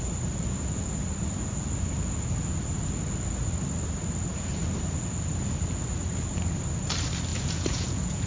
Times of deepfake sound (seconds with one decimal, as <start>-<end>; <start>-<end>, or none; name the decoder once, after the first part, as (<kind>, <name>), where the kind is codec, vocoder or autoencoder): 7.3-8.3 (vocoder, Vocos)